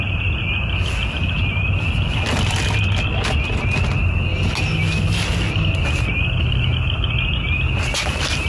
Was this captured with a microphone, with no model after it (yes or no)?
yes